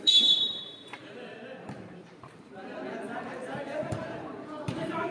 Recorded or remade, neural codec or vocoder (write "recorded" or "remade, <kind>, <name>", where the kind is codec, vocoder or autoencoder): remade, vocoder, BigVGAN v2